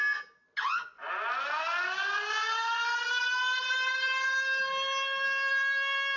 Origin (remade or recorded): recorded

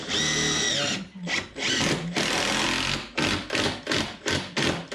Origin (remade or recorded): recorded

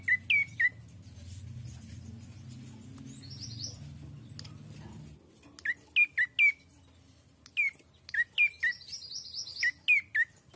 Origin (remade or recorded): recorded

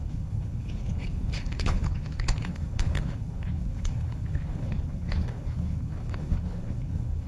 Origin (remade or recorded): remade